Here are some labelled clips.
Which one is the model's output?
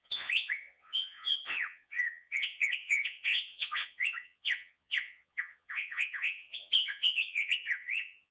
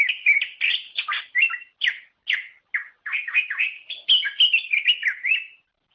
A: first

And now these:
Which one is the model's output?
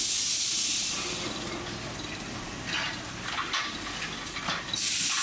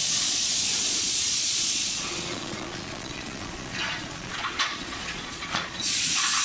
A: second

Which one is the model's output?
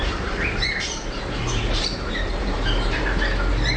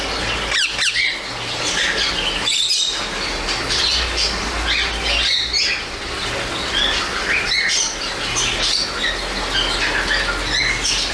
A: first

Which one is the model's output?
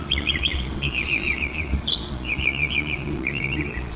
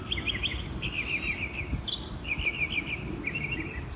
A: first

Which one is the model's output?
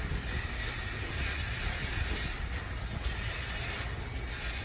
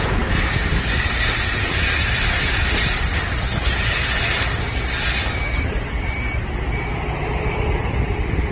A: second